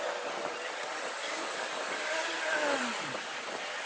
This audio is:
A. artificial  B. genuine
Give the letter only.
B